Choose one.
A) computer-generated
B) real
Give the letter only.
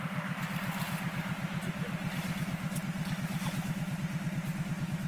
B